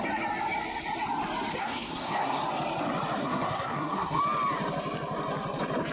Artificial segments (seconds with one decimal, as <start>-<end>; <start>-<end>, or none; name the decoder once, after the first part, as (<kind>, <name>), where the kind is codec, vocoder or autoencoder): 1.6-2.4 (codec, SNAC); 3.2-4.2